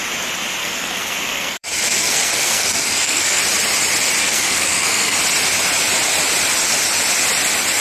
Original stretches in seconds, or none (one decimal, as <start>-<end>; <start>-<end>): 0.0-0.6; 3.4-4.2; 5.2-7.8